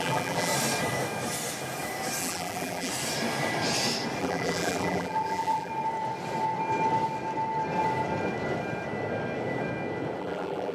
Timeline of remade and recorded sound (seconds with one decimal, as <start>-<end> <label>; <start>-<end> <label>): 0.0-0.5 remade; 0.5-2.2 recorded; 2.2-2.9 remade; 2.9-4.2 recorded; 4.2-5.7 remade; 5.7-10.2 recorded; 10.2-10.7 remade